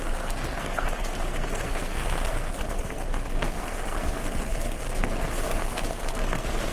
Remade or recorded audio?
remade